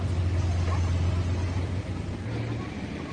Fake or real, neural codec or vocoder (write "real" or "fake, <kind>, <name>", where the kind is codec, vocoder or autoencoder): real